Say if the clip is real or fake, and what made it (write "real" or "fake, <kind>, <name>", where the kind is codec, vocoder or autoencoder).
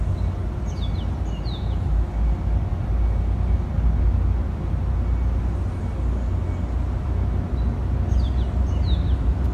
real